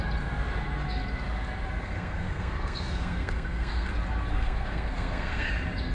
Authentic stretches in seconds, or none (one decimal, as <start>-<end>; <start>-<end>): 0.0-1.8; 3.9-4.3; 5.5-5.9